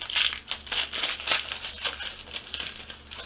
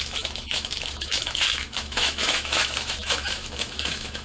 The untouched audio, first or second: first